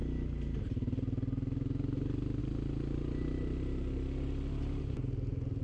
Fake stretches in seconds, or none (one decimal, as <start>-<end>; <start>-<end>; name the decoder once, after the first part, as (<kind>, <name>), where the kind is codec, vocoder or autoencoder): none